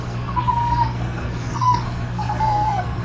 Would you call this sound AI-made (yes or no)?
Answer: yes